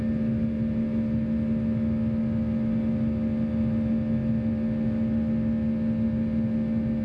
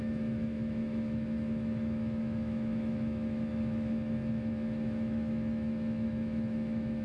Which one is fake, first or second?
second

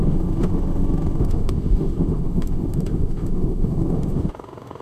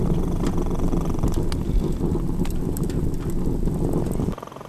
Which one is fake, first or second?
first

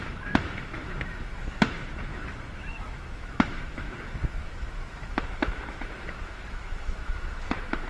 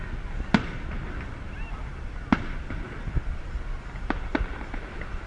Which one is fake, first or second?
first